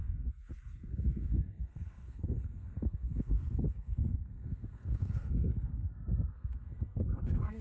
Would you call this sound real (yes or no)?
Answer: no